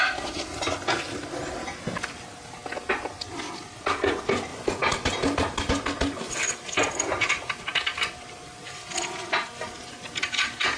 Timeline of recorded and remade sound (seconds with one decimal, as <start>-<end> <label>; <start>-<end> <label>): 0.0-10.8 recorded